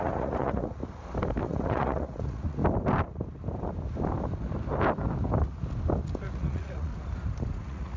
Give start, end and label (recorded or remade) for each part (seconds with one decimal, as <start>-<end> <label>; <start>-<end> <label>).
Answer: 0.0-0.8 remade; 0.8-1.4 recorded; 1.4-2.6 remade; 2.6-6.2 recorded; 6.2-6.9 remade; 6.9-7.6 recorded; 7.6-8.0 remade

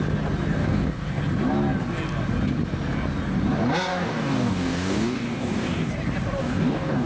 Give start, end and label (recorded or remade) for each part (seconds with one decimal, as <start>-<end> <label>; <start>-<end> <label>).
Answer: 0.0-0.6 recorded; 0.6-1.2 remade; 1.2-3.9 recorded; 3.9-5.9 remade; 5.9-6.4 recorded; 6.4-7.1 remade

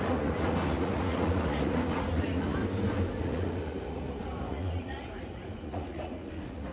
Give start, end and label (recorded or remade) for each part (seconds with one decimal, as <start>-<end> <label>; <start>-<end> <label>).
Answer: 0.0-2.6 remade; 2.6-3.2 recorded; 3.2-6.7 remade

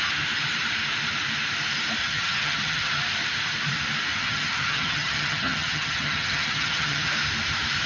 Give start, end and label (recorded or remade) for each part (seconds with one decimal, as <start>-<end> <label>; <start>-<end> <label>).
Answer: 0.0-2.0 recorded; 2.0-2.9 remade; 2.9-4.1 recorded; 4.1-7.1 remade; 7.1-7.9 recorded

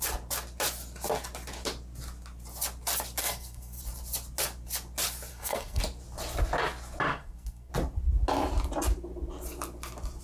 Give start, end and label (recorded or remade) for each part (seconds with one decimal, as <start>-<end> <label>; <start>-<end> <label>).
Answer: 0.0-3.2 recorded; 3.2-3.8 remade; 3.8-5.3 recorded; 5.3-5.8 remade; 5.8-7.1 recorded; 7.1-7.7 remade; 7.7-10.2 recorded